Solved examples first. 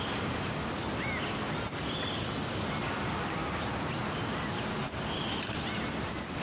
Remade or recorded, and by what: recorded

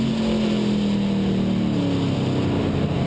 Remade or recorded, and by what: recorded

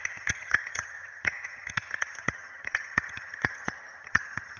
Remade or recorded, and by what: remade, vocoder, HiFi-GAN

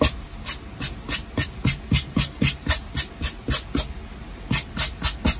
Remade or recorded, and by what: recorded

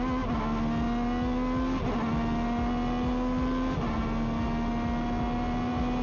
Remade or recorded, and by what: recorded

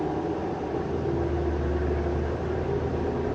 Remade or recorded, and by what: recorded